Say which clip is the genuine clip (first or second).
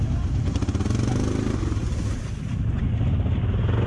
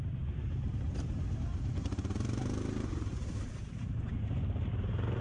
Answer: first